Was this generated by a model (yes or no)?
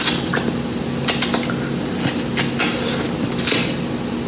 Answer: no